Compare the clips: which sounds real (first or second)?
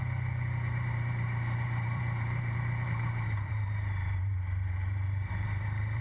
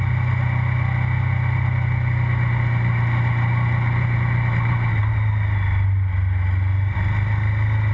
second